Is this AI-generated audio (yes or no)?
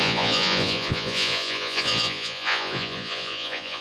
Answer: yes